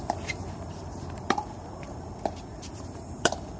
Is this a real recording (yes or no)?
no